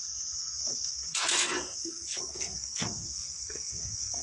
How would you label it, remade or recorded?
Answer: remade